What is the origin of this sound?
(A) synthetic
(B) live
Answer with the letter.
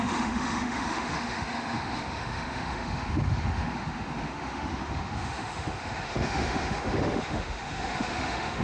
A